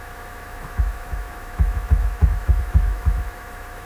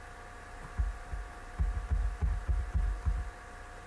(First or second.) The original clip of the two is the second